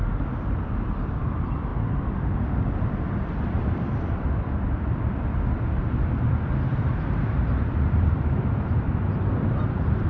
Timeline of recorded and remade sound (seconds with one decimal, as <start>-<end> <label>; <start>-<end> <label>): 0.0-1.7 remade; 1.7-2.9 recorded; 2.9-10.1 remade